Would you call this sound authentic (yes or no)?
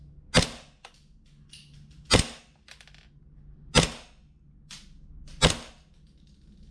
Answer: yes